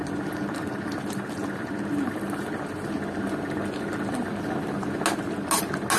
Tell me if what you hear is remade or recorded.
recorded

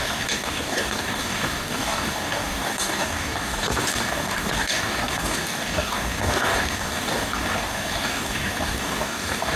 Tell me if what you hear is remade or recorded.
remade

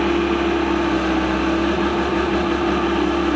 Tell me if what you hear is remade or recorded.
recorded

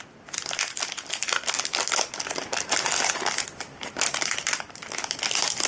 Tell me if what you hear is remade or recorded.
recorded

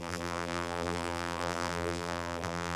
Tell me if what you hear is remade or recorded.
remade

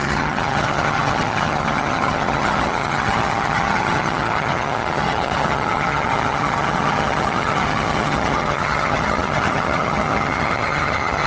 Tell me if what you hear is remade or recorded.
remade